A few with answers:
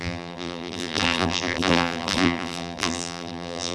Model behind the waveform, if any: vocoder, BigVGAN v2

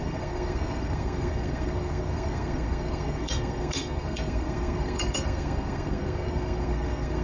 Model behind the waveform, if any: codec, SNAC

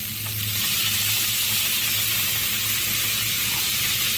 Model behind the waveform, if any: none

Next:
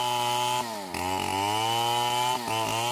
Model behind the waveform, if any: none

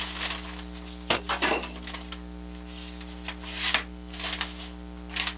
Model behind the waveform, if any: none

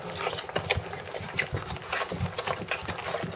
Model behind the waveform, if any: none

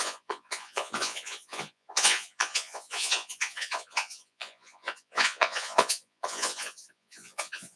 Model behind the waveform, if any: vocoder, Vocos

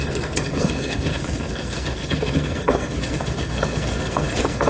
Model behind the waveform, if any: codec, SNAC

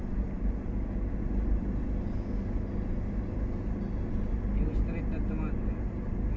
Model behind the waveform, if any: none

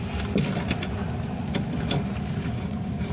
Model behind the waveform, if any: none